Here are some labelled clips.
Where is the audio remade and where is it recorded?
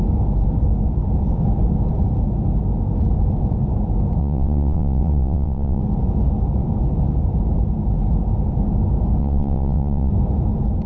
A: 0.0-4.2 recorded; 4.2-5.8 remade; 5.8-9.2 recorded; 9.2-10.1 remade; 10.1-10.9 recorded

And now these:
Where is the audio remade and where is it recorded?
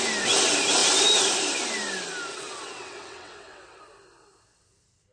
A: 0.0-2.3 recorded; 2.3-3.8 remade; 3.8-5.1 recorded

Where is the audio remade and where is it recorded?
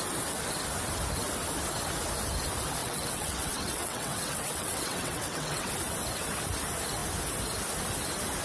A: 0.0-2.8 recorded; 2.8-5.7 remade; 5.7-8.4 recorded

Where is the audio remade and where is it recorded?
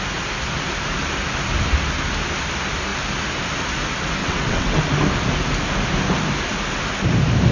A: 0.0-4.2 recorded; 4.2-4.8 remade; 4.8-7.5 recorded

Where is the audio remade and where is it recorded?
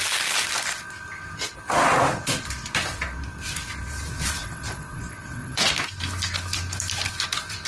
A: 0.0-4.4 recorded; 4.4-5.7 remade; 5.7-7.7 recorded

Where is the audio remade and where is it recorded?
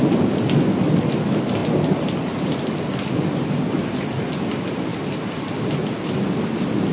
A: 0.0-6.9 recorded